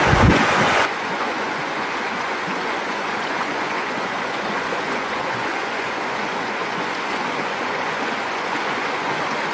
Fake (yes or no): yes